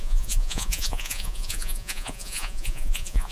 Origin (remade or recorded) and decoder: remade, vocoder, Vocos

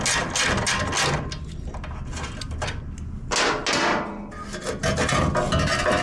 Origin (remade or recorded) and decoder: recorded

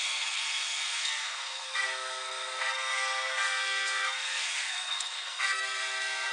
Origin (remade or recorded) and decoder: remade, codec, SNAC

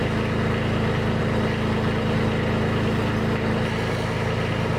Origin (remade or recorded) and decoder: recorded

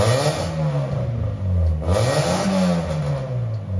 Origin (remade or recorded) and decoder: recorded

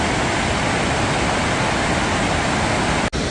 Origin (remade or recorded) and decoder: recorded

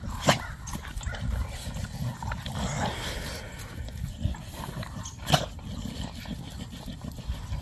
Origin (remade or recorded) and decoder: recorded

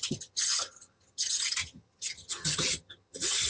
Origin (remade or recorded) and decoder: remade, vocoder, HiFi-GAN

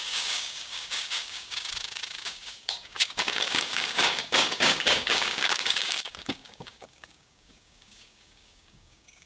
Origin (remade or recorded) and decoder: remade, codec, DAC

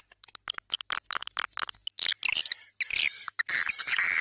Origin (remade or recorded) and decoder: recorded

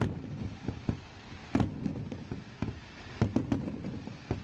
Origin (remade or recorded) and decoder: recorded